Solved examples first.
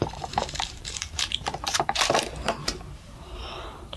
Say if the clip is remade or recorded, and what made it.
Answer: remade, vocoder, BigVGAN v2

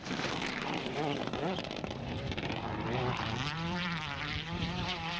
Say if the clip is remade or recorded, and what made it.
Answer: remade, vocoder, BigVGAN v2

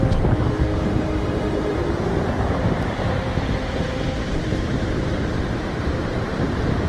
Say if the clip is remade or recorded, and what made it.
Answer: remade, vocoder, BigVGAN v2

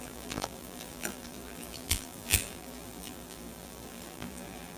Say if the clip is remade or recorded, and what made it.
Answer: remade, vocoder, BigVGAN v2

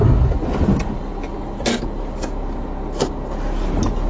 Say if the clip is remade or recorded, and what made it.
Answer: recorded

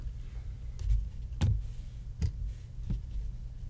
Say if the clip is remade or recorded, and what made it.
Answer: recorded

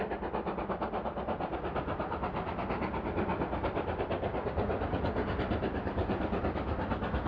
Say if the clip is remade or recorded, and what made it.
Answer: recorded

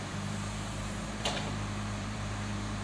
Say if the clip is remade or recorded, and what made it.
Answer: remade, vocoder, BigVGAN v2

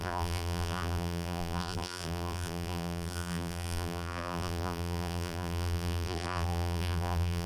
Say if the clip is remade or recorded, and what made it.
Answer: remade, vocoder, BigVGAN v2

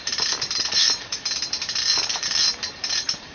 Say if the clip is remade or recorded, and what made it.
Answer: remade, vocoder, BigVGAN v2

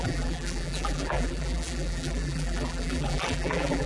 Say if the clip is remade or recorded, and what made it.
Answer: remade, vocoder, BigVGAN v2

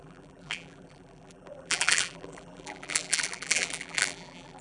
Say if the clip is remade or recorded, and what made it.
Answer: remade, vocoder, BigVGAN v2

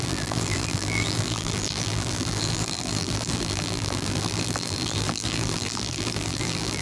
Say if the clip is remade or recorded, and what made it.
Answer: remade, vocoder, BigVGAN v2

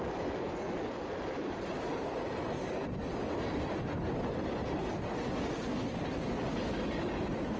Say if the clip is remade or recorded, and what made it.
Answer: remade, vocoder, BigVGAN v2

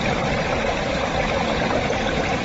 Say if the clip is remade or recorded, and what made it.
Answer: recorded